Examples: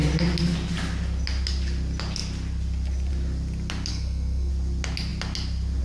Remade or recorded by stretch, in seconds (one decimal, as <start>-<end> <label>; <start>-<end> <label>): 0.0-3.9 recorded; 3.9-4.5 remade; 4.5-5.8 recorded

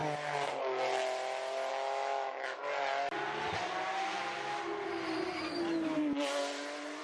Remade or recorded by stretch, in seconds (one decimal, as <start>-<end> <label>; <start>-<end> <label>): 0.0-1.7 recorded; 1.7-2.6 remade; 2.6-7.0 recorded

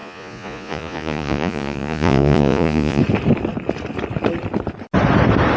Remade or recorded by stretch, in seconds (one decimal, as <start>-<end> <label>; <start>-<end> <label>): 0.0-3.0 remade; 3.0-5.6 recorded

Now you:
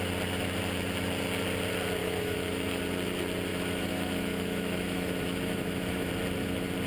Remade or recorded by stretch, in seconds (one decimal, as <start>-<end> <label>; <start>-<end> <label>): 0.0-2.0 recorded; 2.0-2.8 remade; 2.8-3.5 recorded; 3.5-6.1 remade; 6.1-6.9 recorded

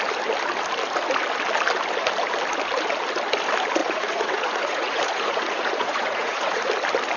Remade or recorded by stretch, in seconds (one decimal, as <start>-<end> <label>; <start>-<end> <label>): 0.0-3.8 recorded; 3.8-6.6 remade; 6.6-7.2 recorded

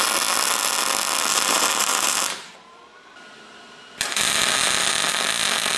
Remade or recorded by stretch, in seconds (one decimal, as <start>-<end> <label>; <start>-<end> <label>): 0.0-1.3 recorded; 1.3-2.8 remade; 2.8-5.8 recorded